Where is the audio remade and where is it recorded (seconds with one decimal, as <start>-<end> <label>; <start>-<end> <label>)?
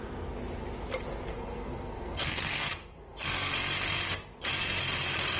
0.0-1.3 recorded; 1.3-3.5 remade; 3.5-5.4 recorded